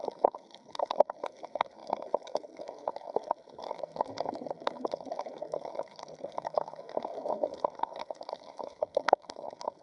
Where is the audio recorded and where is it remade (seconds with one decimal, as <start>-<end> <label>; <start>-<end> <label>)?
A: 0.0-9.8 remade